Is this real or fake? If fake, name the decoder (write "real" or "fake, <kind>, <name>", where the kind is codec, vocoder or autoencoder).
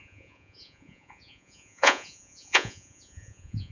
fake, vocoder, Vocos